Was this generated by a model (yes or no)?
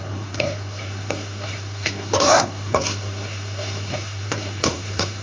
yes